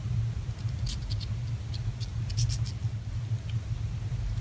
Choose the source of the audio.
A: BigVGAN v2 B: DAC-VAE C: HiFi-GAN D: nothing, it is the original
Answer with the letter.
D